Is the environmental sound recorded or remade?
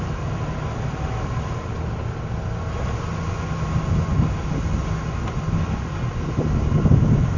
recorded